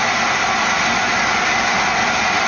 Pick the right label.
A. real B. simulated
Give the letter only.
A